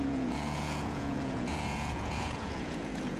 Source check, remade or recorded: remade